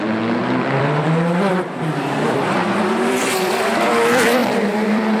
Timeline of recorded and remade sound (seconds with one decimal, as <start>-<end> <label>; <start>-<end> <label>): 0.0-0.4 recorded; 0.4-3.5 remade; 3.5-4.4 recorded; 4.4-5.2 remade